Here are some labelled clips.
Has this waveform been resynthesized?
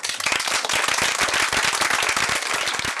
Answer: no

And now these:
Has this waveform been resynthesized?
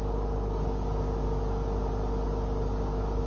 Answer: no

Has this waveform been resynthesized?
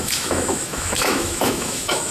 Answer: yes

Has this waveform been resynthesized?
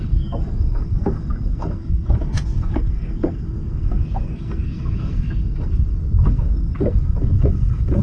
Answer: yes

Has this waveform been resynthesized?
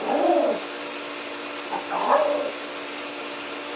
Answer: no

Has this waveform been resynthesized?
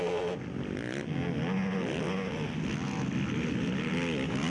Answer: no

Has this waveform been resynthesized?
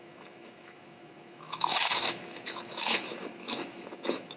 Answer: yes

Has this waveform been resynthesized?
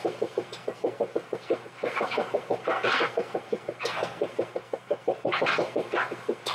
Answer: yes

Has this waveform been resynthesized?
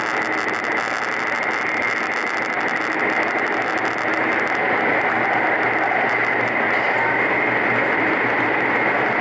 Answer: no